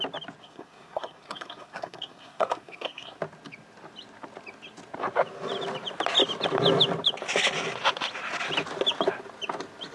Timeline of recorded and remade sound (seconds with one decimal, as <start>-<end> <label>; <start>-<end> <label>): 0.0-0.4 recorded; 0.4-3.2 remade; 3.2-9.9 recorded